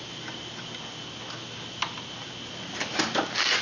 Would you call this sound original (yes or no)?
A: yes